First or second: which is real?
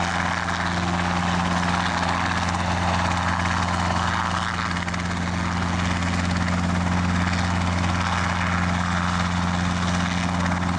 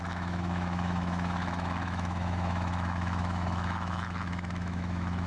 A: first